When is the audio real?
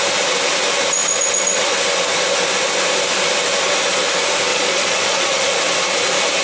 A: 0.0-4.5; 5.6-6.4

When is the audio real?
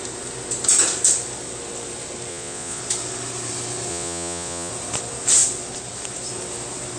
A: 0.0-2.3; 2.8-3.9; 4.7-7.0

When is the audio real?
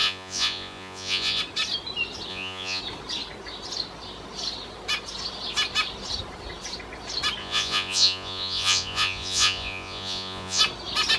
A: 1.4-2.3; 2.8-7.4; 10.6-11.2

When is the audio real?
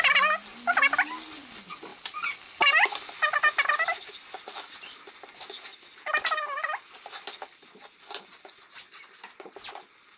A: 0.0-10.2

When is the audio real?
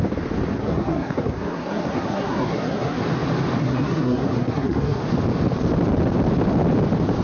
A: 0.0-0.6; 3.0-3.6; 5.0-7.2